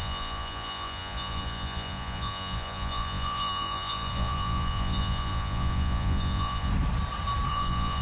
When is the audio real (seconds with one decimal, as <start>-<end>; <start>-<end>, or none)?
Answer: 6.7-7.5